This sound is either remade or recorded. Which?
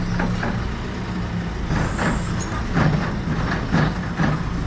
recorded